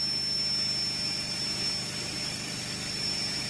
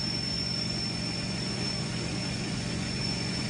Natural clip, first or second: first